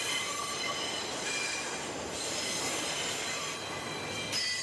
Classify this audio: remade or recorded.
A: recorded